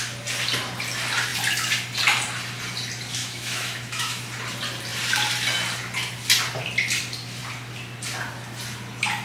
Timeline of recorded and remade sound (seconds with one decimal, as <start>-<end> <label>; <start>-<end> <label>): 0.0-3.2 recorded; 3.2-4.2 remade; 4.2-9.2 recorded